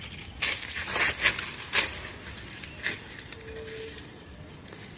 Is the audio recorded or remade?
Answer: recorded